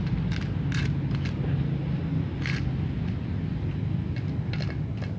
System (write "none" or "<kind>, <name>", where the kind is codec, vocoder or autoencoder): none